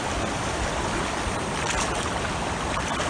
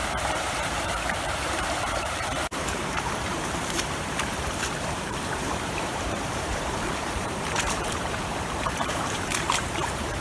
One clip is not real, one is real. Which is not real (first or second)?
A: second